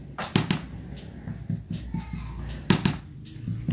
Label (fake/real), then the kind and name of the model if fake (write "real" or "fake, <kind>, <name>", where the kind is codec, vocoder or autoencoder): real